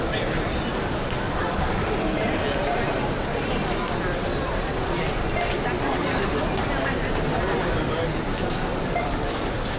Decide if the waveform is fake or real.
real